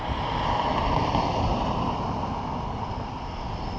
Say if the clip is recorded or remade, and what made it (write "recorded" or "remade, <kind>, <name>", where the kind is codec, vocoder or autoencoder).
recorded